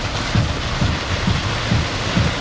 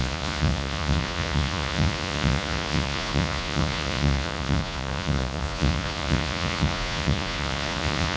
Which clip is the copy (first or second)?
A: second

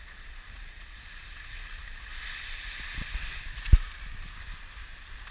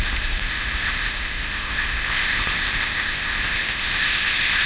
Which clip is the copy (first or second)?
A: second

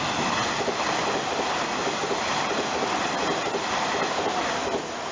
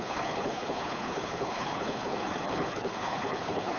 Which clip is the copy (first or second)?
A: second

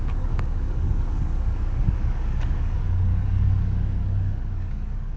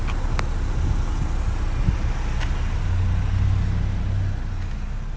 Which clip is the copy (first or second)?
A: first